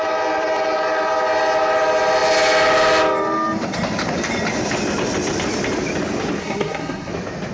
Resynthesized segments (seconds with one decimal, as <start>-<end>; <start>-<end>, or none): 6.4-7.1